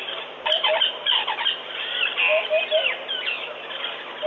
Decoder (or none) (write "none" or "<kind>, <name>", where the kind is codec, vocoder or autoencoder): none